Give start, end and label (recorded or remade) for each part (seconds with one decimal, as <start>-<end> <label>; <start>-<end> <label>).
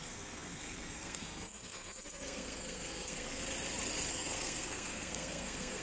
0.0-3.4 remade; 3.4-4.1 recorded; 4.1-5.8 remade